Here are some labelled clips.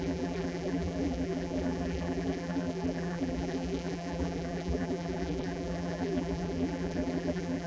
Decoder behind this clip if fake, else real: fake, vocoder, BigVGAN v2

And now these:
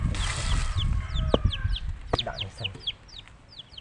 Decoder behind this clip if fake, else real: real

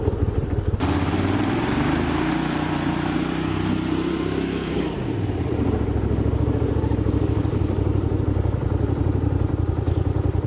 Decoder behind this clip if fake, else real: fake, vocoder, BigVGAN v2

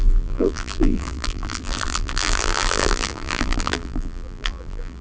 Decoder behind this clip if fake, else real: fake, vocoder, BigVGAN v2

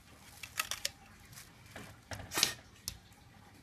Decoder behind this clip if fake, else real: real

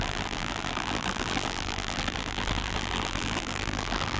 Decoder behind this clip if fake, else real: fake, vocoder, BigVGAN v2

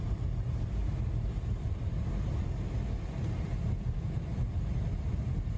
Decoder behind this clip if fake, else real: real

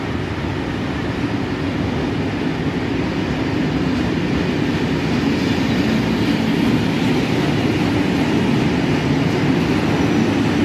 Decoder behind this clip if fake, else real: real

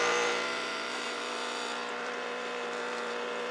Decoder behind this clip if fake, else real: fake, vocoder, BigVGAN v2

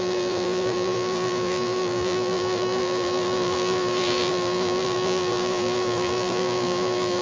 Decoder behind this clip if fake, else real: fake, vocoder, BigVGAN v2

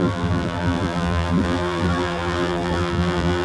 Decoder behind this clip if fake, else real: fake, vocoder, BigVGAN v2